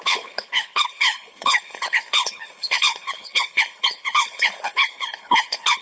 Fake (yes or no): yes